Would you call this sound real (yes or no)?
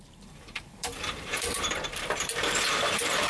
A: no